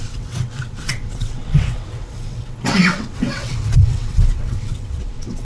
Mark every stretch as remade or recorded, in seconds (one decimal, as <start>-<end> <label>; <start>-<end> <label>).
0.0-5.4 remade